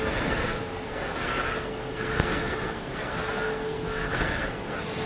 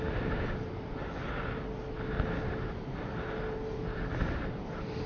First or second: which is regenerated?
first